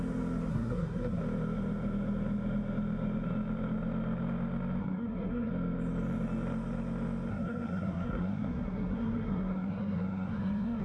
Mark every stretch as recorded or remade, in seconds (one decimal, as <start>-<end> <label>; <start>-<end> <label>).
0.0-0.5 recorded; 0.5-1.2 remade; 1.2-4.8 recorded; 4.8-5.5 remade; 5.5-7.3 recorded; 7.3-10.8 remade

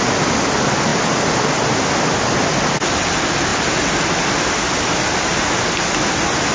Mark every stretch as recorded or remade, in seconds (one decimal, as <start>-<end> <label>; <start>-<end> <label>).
0.0-6.5 recorded

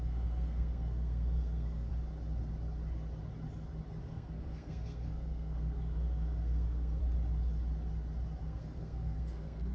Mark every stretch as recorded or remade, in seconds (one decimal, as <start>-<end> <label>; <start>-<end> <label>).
0.0-1.9 remade; 1.9-4.0 recorded; 4.0-7.0 remade; 7.0-8.4 recorded; 8.4-9.7 remade

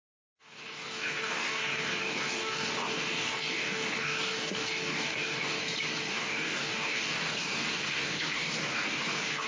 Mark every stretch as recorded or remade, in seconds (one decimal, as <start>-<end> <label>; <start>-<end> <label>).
0.0-5.6 remade; 5.6-6.1 recorded; 6.1-9.5 remade